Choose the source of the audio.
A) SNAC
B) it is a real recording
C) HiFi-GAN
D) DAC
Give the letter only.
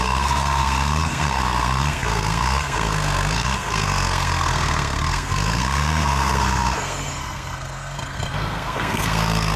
A